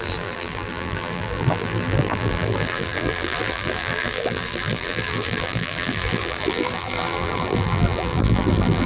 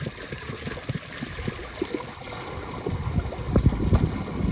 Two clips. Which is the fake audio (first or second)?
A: first